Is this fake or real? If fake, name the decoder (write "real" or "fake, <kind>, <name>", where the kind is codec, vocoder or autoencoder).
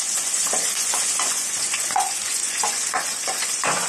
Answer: fake, vocoder, Vocos